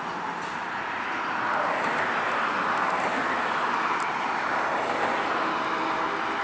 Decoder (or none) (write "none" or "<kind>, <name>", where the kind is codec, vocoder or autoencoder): none